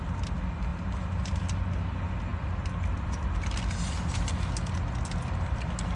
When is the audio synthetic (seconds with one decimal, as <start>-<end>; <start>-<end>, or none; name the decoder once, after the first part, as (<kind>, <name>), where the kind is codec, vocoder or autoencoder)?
none